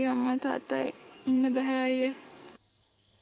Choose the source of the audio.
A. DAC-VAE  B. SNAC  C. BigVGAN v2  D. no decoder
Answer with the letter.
B